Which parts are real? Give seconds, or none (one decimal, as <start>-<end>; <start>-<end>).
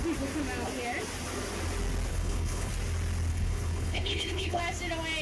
0.0-2.1; 2.7-3.3; 4.6-5.2